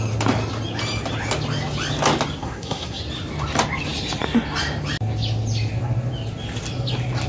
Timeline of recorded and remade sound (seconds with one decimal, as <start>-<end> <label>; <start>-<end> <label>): 0.0-2.4 recorded; 2.4-3.0 remade; 3.0-7.3 recorded